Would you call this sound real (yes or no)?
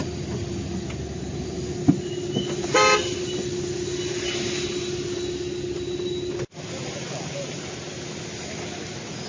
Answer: yes